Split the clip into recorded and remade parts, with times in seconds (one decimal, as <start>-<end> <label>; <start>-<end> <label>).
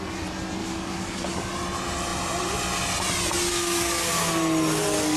0.0-0.6 recorded; 0.6-1.5 remade; 1.5-3.5 recorded; 3.5-4.1 remade; 4.1-5.2 recorded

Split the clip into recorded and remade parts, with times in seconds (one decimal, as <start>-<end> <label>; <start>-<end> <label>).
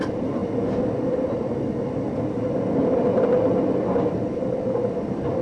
0.0-0.4 remade; 0.4-3.6 recorded; 3.6-5.4 remade